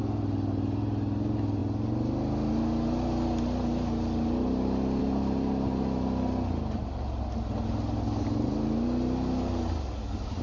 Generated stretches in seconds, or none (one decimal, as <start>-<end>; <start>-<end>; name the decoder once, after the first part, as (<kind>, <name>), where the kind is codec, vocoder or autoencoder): none